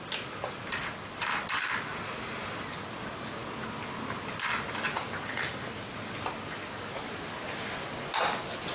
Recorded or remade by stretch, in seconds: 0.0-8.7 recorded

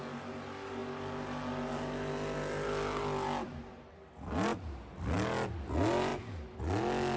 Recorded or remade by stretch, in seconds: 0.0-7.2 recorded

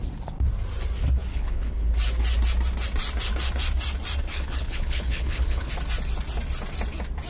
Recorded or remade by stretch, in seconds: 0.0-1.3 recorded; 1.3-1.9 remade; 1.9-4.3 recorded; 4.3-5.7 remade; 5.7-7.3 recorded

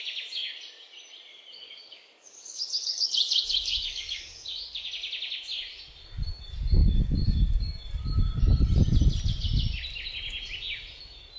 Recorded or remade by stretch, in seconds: 0.0-1.3 recorded; 1.3-4.9 remade; 4.9-11.4 recorded